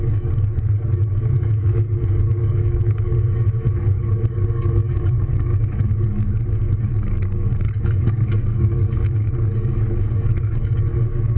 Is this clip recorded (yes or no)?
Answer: no